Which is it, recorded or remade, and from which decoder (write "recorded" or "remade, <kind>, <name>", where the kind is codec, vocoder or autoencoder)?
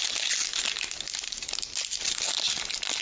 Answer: recorded